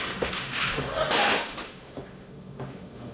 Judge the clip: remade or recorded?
remade